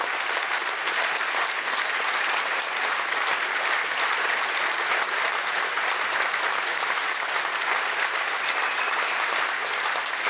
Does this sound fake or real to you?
real